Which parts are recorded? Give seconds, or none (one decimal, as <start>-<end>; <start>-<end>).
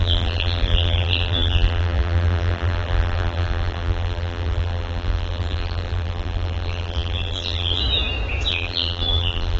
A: 7.8-8.5